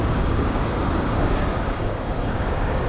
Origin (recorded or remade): remade